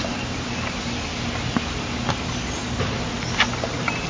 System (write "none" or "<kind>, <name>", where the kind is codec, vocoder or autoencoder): none